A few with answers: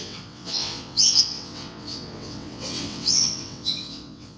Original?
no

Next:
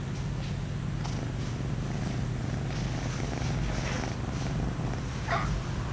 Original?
yes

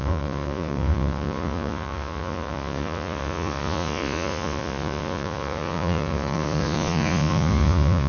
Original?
no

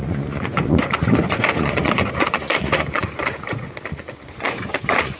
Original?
no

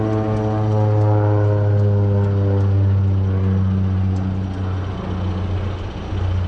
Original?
yes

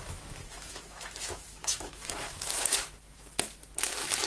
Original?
no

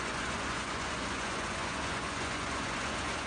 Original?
no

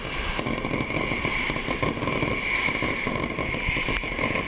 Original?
yes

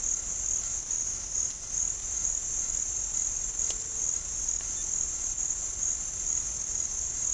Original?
yes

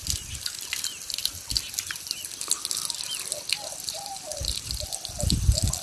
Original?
yes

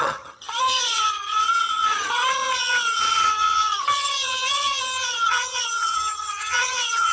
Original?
no